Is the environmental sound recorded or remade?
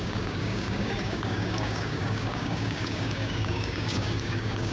remade